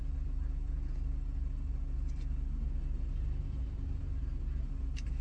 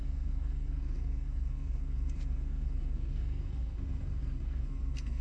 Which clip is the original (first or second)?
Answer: first